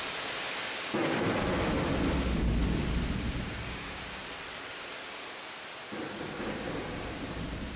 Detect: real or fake real